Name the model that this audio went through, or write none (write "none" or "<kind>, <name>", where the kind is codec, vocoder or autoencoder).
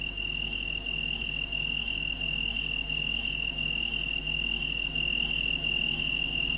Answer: none